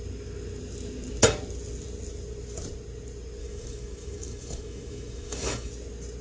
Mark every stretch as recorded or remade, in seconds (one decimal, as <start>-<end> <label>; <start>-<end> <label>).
0.0-3.4 recorded; 3.4-5.7 remade; 5.7-6.2 recorded